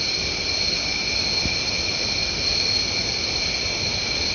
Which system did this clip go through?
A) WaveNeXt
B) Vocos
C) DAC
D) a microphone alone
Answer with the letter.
D